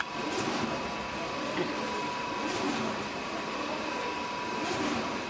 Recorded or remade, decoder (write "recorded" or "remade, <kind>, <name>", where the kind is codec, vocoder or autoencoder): recorded